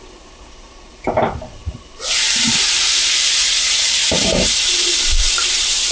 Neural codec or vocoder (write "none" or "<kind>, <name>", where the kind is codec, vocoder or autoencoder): vocoder, BigVGAN v2